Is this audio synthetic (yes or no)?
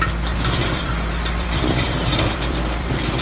yes